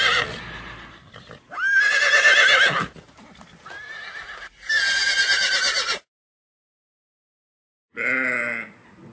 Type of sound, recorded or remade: recorded